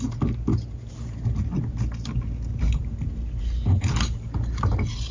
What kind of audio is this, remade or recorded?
recorded